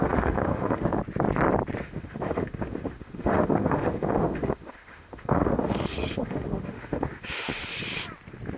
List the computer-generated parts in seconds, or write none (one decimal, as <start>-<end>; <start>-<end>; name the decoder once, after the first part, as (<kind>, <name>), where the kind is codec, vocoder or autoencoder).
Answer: 0.0-1.0 (autoencoder, DAC-VAE); 1.8-7.7